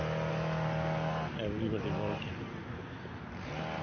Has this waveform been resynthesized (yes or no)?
no